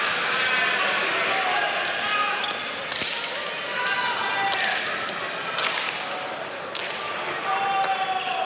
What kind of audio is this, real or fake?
real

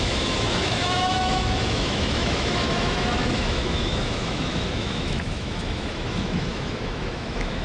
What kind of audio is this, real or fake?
fake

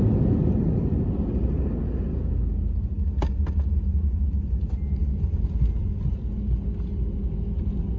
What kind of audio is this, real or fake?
real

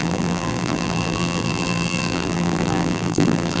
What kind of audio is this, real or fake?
fake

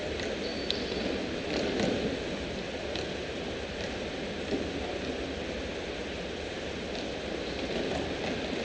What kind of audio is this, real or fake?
real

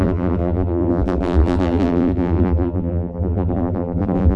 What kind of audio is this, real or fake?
fake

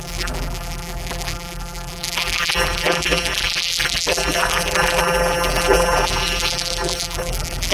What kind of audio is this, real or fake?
fake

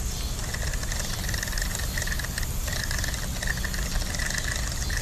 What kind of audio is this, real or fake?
real